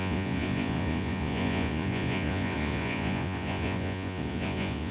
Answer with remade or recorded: remade